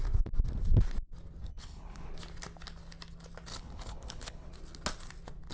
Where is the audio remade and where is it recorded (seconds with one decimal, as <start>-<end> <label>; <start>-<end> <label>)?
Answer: 0.0-1.4 recorded; 1.4-2.1 remade; 2.1-3.5 recorded; 3.5-4.5 remade; 4.5-5.5 recorded